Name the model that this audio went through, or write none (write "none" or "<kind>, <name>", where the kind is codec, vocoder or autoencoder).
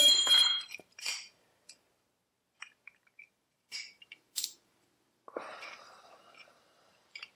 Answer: vocoder, BigVGAN v2